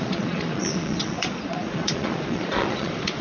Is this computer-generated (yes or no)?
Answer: yes